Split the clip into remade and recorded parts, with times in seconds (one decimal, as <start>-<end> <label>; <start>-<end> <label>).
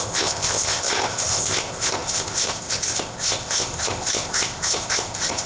0.0-5.5 remade